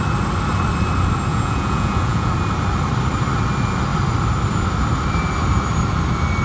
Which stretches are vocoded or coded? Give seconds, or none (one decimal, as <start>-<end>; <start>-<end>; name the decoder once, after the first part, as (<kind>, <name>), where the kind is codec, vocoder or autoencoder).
1.3-2.3 (vocoder, Vocos)